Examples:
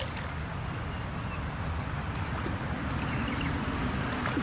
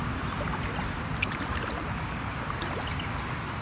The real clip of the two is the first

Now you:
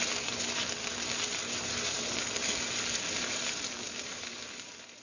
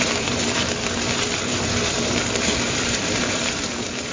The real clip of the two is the first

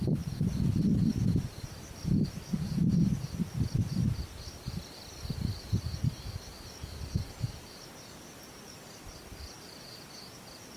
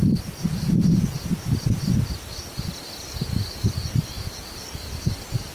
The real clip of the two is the second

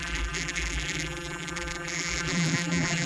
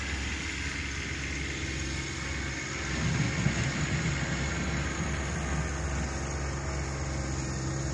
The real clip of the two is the second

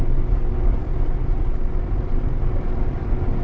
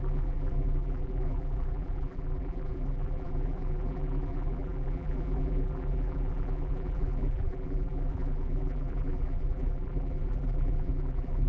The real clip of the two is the first